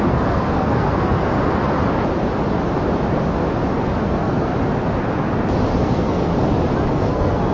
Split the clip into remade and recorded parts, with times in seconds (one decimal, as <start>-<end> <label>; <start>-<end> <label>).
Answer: 0.0-1.3 remade; 1.3-4.0 recorded; 4.0-4.5 remade; 4.5-5.8 recorded; 5.8-6.3 remade; 6.3-6.9 recorded; 6.9-7.5 remade